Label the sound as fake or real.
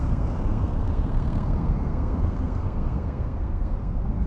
fake